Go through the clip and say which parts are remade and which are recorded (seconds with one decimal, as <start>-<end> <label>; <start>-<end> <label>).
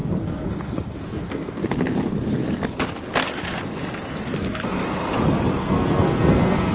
0.0-1.6 remade; 1.6-5.6 recorded; 5.6-6.7 remade